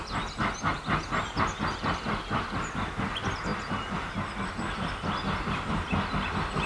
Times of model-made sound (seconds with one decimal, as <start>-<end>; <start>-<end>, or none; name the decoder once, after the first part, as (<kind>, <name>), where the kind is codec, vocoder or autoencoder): none